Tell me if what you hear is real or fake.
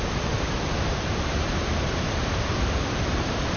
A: fake